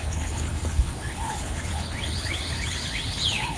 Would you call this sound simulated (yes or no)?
yes